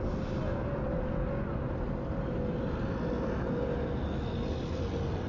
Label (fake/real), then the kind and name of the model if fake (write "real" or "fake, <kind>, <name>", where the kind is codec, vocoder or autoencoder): real